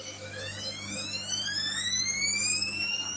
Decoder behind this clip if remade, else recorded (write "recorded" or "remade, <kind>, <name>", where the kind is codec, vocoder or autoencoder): remade, autoencoder, DAC-VAE